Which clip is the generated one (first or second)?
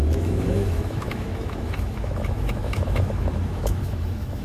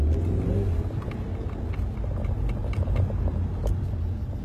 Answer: first